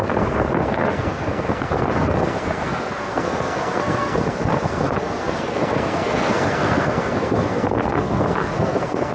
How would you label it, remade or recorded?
remade